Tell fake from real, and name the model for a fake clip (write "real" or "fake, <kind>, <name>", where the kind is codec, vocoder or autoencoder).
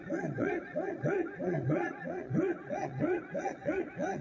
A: fake, vocoder, Vocos